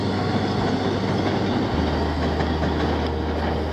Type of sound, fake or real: real